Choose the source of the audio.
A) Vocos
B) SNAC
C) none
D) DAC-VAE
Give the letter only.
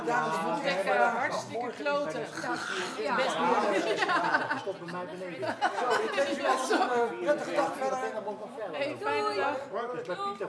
C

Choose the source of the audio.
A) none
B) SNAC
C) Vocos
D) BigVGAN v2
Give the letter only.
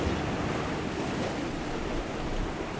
A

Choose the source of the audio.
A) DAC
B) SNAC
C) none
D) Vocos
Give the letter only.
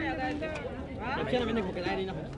C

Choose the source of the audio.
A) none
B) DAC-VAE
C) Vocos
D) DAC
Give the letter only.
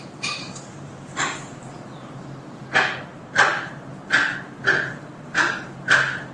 A